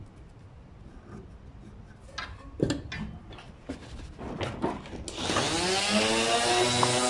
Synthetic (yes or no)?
no